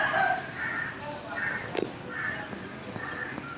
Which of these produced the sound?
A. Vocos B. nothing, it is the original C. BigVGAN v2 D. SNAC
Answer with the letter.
B